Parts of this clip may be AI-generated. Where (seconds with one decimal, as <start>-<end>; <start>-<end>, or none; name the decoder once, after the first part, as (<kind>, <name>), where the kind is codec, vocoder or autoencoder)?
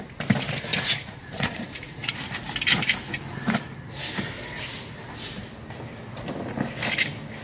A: 0.7-2.1 (vocoder, Vocos)